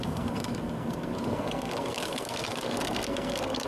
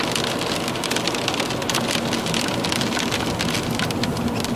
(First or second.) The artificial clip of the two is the first